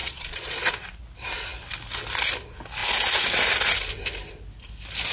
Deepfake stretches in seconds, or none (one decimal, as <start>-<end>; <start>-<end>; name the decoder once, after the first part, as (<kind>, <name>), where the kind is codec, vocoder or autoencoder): 0.0-0.7 (vocoder, Vocos)